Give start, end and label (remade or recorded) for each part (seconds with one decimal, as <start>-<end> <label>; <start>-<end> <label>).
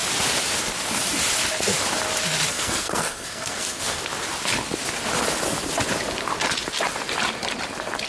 0.0-2.5 recorded; 2.5-4.0 remade; 4.0-8.1 recorded